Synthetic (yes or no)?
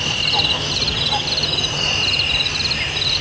no